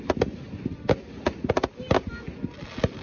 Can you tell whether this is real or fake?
real